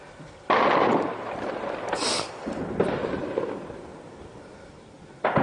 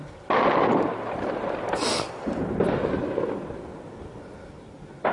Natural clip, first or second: second